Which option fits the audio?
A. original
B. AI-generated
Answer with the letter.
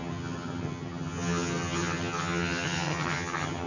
B